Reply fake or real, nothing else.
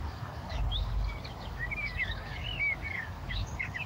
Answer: fake